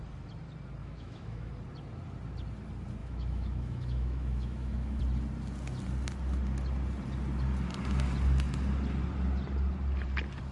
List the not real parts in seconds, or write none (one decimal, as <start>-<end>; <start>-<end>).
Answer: 0.8-1.5; 3.0-5.0